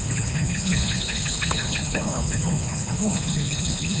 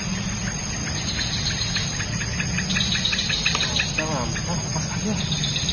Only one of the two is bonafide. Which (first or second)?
second